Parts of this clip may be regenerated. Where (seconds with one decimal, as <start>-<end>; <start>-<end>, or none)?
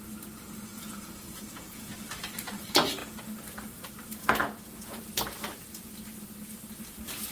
0.7-1.9; 4.4-5.1